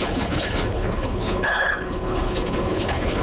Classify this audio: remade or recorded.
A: remade